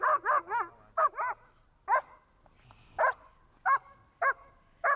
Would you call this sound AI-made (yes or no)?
no